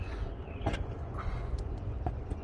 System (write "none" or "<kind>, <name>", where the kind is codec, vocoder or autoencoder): vocoder, Vocos